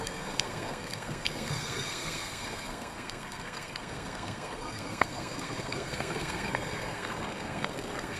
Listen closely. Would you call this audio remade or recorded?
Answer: remade